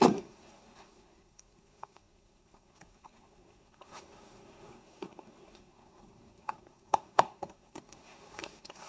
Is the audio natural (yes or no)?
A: no